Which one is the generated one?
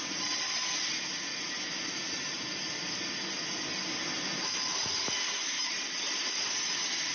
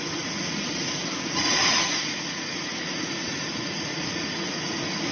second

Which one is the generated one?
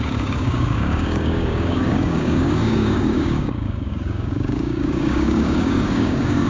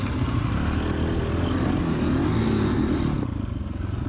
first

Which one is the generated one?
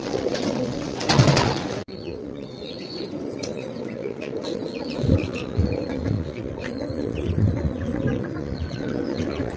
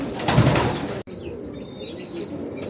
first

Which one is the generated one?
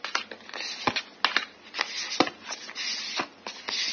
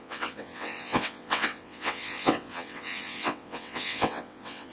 second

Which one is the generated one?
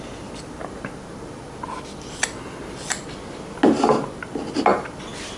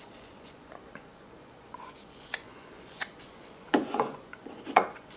second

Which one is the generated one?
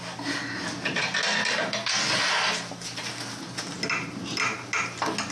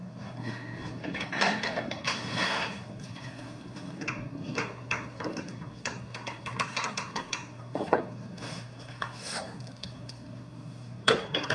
second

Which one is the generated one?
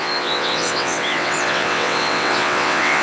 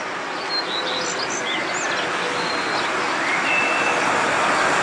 first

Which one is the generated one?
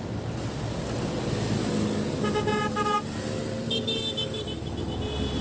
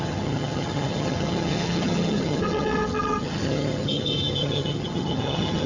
second